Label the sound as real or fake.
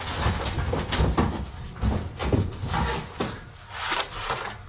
real